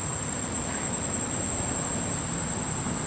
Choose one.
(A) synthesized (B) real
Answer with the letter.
B